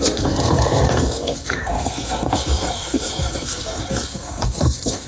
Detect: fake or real fake